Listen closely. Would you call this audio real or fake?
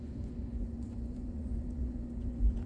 fake